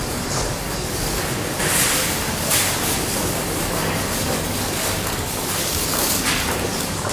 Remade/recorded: remade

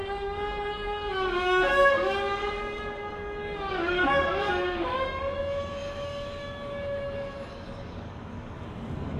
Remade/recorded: remade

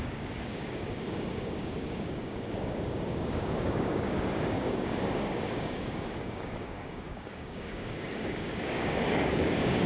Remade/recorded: remade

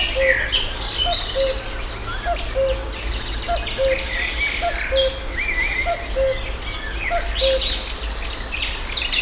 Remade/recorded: recorded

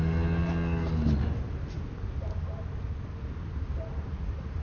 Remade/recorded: recorded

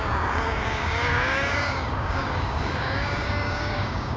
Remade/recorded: remade